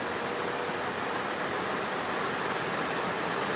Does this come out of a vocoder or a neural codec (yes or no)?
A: no